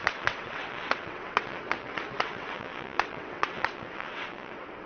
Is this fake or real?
fake